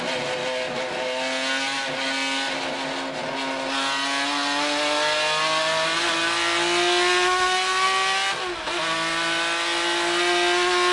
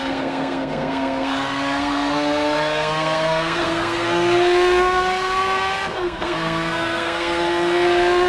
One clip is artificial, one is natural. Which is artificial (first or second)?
second